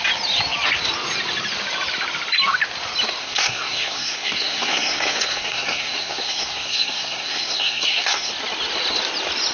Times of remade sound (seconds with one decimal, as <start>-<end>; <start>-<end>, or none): 3.2-8.3